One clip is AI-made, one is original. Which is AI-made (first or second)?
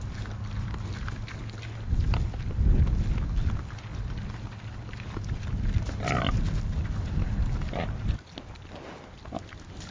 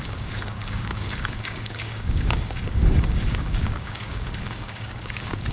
second